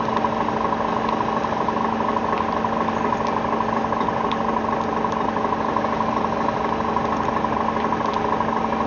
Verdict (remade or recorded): recorded